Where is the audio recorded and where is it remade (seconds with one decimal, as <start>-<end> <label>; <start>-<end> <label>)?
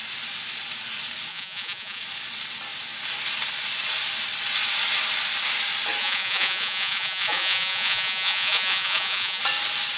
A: 0.0-1.3 recorded; 1.3-2.0 remade; 2.0-6.0 recorded; 6.0-9.4 remade; 9.4-10.0 recorded